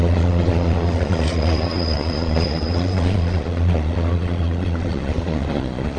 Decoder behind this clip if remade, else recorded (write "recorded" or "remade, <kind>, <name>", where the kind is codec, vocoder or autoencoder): remade, vocoder, Vocos